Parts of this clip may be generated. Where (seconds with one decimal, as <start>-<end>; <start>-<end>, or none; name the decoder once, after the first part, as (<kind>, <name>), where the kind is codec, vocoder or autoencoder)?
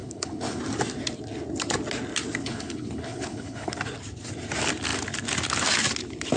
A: 0.0-0.6 (codec, HILCodec); 2.4-3.8